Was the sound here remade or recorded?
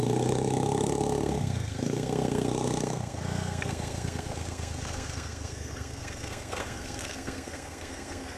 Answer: remade